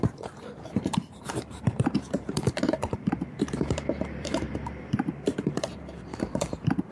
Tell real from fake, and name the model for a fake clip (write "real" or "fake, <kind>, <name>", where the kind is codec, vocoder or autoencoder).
fake, vocoder, BigVGAN v2